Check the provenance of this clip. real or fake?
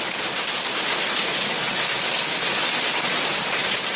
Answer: real